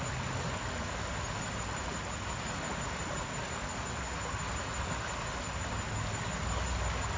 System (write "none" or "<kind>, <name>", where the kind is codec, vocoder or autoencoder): none